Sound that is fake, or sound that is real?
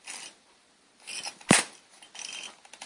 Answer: real